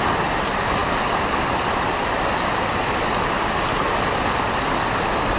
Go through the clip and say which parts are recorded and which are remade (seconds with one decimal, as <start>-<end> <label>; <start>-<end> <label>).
0.0-0.8 recorded; 0.8-2.8 remade; 2.8-5.4 recorded